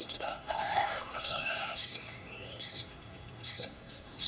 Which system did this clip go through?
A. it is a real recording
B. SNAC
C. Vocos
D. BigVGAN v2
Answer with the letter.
B